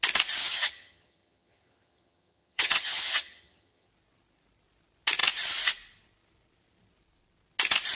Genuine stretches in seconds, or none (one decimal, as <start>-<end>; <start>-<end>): 0.0-0.4; 3.9-7.9

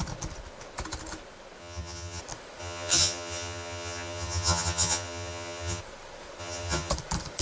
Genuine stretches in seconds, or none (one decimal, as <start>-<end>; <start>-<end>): 0.0-1.6; 2.2-2.6; 5.8-6.4; 6.9-7.4

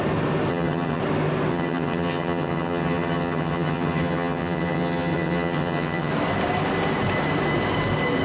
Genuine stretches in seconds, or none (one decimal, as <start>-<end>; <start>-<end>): 0.0-0.5; 1.0-1.5; 6.1-8.2

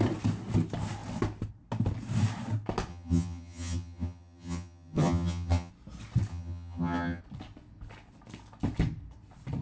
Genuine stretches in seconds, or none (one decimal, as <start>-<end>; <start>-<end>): 0.0-2.9; 5.7-6.3; 7.2-9.6

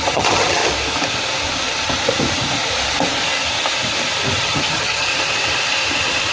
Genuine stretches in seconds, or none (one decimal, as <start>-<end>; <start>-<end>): 0.6-4.4; 5.1-6.3